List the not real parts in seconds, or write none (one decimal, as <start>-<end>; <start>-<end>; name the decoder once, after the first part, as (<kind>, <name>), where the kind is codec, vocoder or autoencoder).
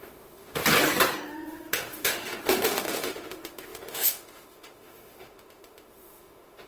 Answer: 0.0-0.6 (autoencoder, DAC-VAE); 1.3-6.7